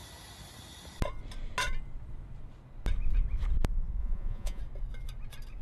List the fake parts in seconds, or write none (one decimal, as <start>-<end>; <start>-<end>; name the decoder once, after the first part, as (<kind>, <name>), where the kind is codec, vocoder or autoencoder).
4.0-4.6 (vocoder, Vocos)